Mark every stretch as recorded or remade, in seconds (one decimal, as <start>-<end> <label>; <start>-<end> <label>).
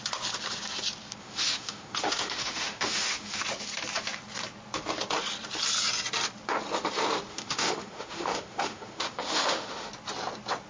0.0-1.2 recorded; 1.2-3.4 remade; 3.4-7.3 recorded; 7.3-9.9 remade; 9.9-10.7 recorded